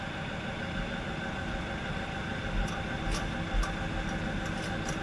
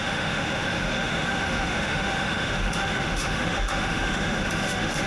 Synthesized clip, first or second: second